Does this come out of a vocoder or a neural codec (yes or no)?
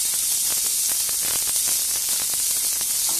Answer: no